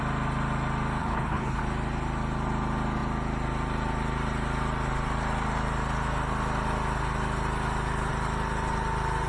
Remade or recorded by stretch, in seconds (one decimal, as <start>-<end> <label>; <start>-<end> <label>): 0.0-1.0 recorded; 1.0-1.6 remade; 1.6-9.3 recorded